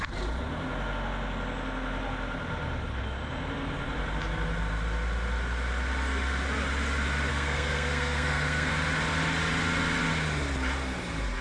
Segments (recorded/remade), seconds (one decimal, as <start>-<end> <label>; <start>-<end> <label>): 0.0-7.3 recorded; 7.3-8.7 remade; 8.7-11.4 recorded